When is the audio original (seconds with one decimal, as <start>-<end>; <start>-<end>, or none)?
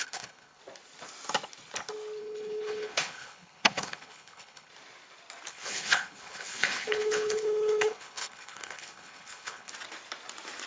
0.6-2.2; 4.7-5.5; 9.7-10.7